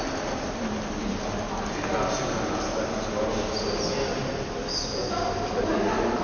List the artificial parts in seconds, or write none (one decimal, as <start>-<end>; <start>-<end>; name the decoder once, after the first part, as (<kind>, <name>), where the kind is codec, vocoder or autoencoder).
none